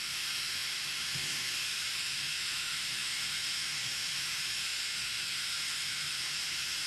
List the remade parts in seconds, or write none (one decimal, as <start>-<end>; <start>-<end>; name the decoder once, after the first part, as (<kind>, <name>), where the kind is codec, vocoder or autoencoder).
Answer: 0.0-6.9 (autoencoder, DAC-VAE)